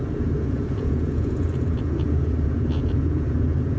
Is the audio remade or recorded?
remade